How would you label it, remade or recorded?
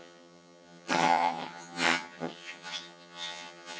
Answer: remade